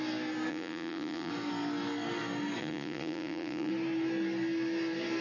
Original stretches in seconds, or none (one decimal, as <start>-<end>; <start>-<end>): 0.0-0.5; 1.3-2.6; 3.7-5.2